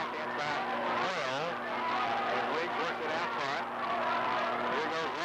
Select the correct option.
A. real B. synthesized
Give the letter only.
A